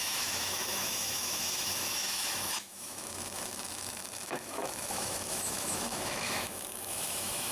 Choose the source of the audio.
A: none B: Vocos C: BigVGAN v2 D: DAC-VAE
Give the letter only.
D